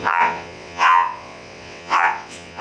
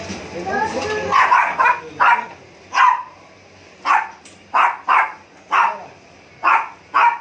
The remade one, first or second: first